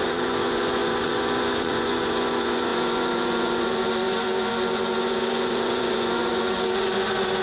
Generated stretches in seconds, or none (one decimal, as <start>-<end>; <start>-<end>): 0.0-7.4